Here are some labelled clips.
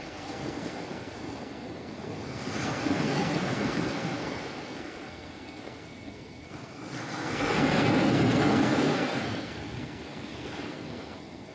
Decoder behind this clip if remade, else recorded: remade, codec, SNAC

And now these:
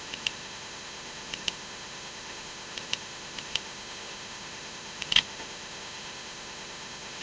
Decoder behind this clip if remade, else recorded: remade, autoencoder, DAC-VAE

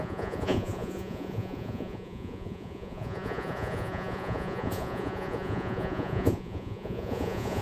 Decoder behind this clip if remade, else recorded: remade, vocoder, Vocos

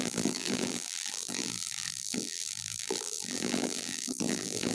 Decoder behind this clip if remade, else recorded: remade, vocoder, BigVGAN v2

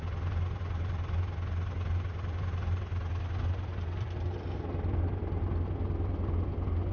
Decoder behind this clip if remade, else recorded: recorded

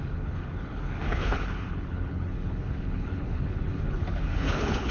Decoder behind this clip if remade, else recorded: remade, codec, HILCodec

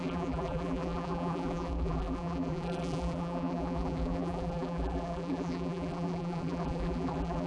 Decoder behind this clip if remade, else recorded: remade, vocoder, BigVGAN v2